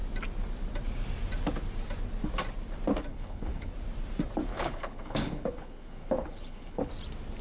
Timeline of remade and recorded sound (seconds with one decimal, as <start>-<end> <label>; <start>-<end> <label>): 0.0-3.1 recorded; 3.1-3.7 remade; 3.7-4.5 recorded; 4.5-6.9 remade; 6.9-7.4 recorded